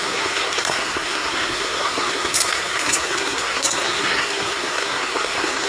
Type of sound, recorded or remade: remade